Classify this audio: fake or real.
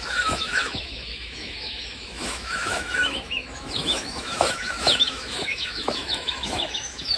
fake